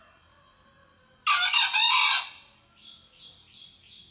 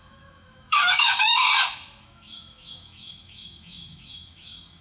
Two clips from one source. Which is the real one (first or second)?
first